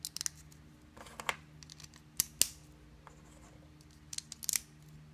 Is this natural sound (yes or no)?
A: yes